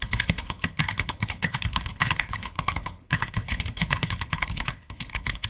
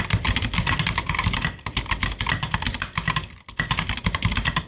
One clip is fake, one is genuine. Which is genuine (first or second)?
second